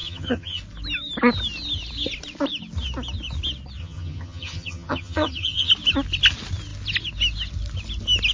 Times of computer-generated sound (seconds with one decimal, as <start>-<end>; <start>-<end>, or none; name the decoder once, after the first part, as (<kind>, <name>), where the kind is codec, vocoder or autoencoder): 0.0-0.6 (vocoder, HiFi-GAN); 3.8-5.7